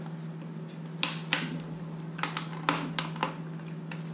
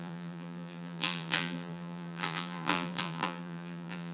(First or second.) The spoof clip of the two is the second